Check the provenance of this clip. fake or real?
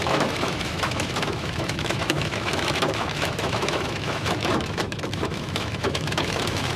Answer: fake